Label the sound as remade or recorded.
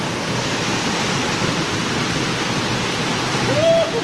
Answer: recorded